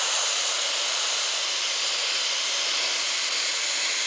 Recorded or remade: recorded